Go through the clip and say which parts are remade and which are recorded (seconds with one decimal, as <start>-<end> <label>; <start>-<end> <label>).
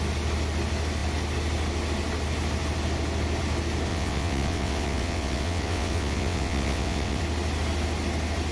0.0-3.9 recorded; 3.9-7.2 remade; 7.2-8.5 recorded